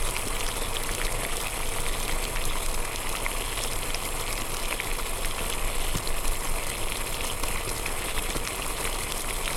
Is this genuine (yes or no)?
yes